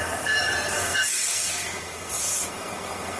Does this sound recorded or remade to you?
remade